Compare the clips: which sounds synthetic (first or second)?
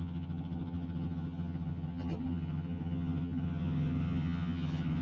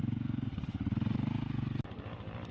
first